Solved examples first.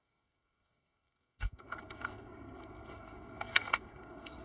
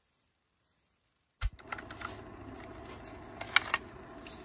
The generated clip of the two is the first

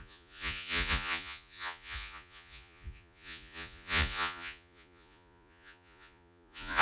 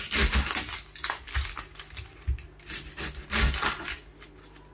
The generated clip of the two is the first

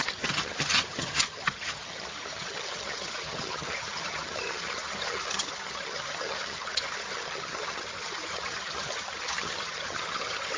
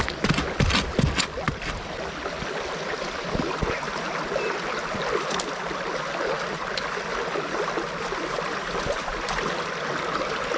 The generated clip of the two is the first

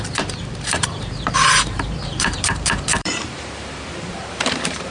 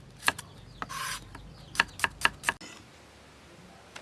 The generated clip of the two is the first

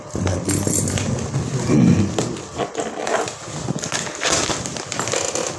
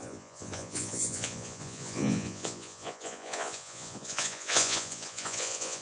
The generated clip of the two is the second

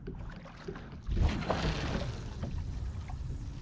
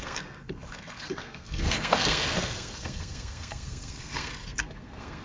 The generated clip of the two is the second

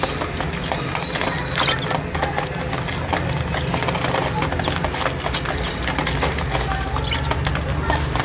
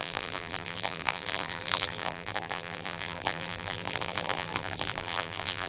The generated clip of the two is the second